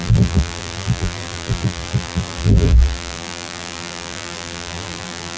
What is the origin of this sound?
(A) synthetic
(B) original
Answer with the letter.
A